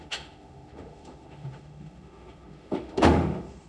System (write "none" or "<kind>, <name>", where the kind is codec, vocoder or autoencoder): autoencoder, DAC-VAE